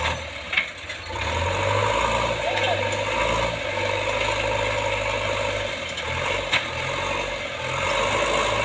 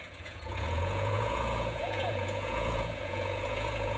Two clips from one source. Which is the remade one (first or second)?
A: second